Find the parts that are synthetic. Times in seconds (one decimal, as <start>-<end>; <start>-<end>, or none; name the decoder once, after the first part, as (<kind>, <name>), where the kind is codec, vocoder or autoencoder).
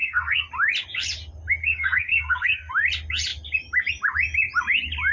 0.0-0.5 (codec, SNAC); 1.6-2.7